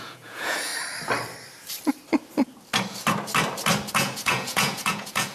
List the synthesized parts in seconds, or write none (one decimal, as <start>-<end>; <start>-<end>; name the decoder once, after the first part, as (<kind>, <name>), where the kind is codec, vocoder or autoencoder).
0.0-0.7 (vocoder, Vocos); 3.9-5.3